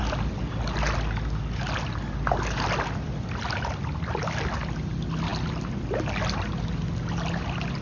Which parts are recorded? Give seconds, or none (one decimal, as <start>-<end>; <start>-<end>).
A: 0.0-7.8